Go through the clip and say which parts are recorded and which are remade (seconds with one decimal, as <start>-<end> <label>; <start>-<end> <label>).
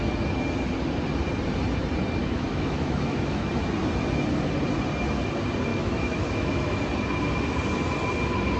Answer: 0.0-2.2 recorded; 2.2-3.5 remade; 3.5-5.7 recorded; 5.7-6.8 remade; 6.8-8.6 recorded